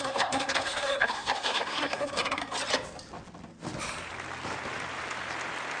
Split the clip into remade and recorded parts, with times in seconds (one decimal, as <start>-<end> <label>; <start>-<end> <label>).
0.0-2.4 remade; 2.4-5.8 recorded